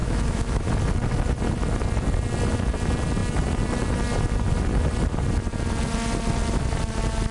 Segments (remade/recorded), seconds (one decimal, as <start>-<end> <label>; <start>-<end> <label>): 0.0-0.7 remade; 0.7-7.3 recorded